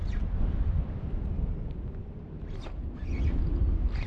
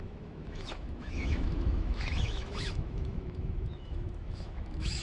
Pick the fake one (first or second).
second